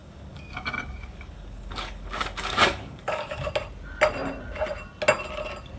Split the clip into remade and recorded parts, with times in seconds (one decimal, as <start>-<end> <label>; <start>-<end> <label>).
0.0-3.5 remade; 3.5-5.8 recorded